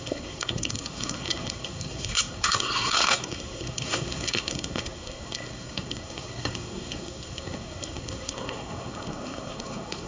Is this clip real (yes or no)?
no